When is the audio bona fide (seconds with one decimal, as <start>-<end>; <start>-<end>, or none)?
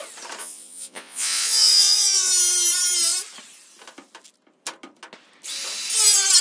0.0-0.4; 2.3-6.4